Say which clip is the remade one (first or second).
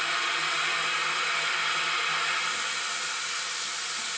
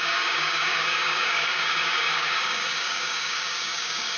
second